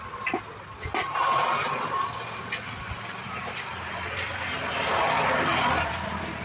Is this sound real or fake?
real